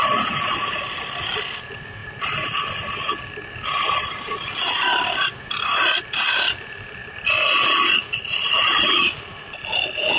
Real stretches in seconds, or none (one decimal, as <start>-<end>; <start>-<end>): 0.0-10.2